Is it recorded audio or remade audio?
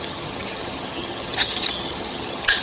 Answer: remade